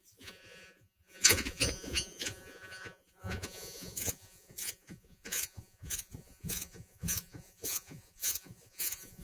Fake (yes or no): yes